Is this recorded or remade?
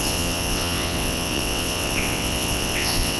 remade